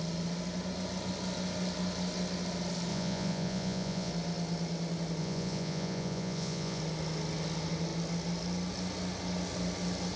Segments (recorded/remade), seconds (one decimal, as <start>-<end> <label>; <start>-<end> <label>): 0.0-2.9 recorded; 2.9-4.1 remade; 4.1-5.2 recorded; 5.2-6.8 remade; 6.8-10.2 recorded